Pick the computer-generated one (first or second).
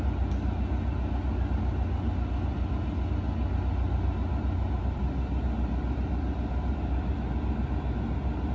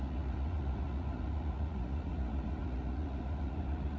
second